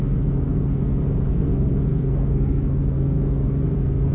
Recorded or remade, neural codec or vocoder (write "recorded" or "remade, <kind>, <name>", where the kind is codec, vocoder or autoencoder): remade, codec, SNAC